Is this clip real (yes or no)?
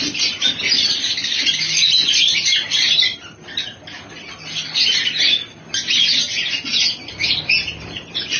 yes